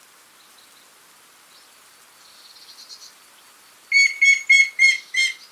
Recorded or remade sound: recorded